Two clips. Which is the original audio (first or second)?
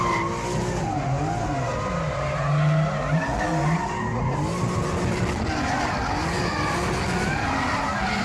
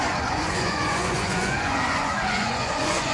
first